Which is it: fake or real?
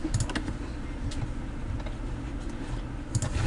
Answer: real